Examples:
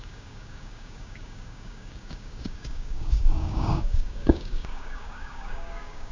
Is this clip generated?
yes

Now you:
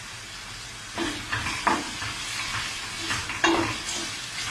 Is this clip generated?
no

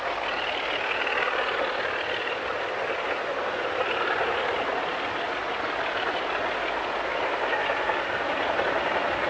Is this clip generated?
no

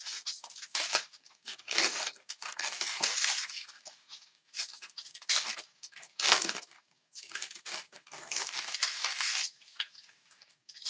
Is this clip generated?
yes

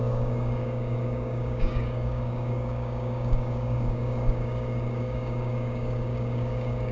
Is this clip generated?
yes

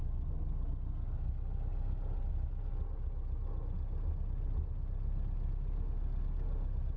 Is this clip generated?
no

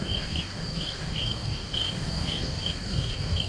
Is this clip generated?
yes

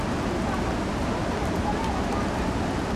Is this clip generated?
no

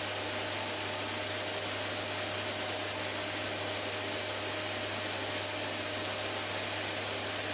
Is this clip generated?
no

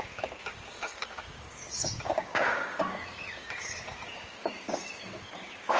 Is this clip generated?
yes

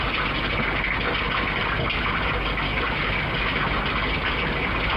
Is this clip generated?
no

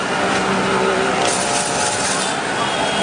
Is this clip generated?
no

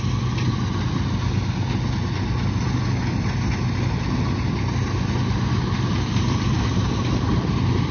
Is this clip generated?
no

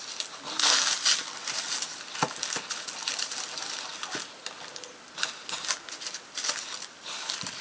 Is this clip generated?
no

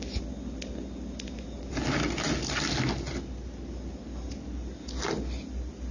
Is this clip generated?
no